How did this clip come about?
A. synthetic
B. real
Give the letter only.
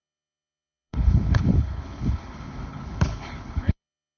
A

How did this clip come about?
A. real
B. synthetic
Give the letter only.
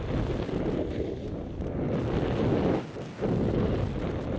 A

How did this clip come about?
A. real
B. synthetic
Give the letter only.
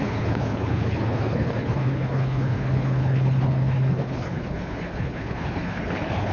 B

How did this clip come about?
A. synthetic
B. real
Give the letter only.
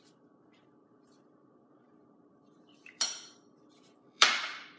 A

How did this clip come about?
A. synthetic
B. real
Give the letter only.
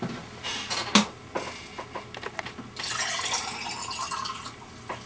B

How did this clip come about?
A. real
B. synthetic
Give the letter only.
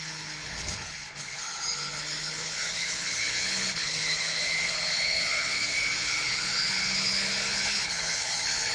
B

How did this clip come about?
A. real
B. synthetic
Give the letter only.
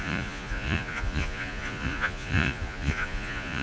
B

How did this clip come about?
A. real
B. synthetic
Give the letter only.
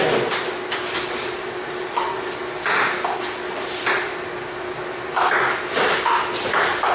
A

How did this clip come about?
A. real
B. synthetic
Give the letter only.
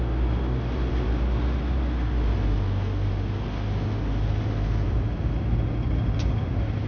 A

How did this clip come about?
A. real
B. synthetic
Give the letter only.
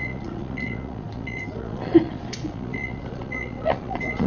B